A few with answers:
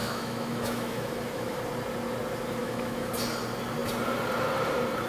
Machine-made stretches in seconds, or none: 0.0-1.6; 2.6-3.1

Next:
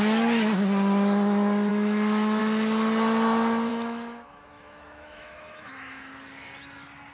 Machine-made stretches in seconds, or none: 1.7-2.4; 3.7-6.1

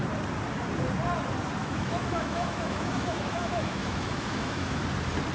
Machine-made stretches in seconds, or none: 1.6-4.8